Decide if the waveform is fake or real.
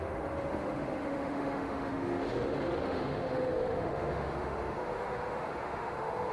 fake